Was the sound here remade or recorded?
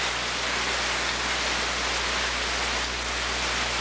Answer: recorded